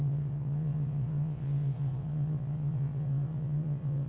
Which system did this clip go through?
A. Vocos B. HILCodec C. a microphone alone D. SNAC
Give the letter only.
A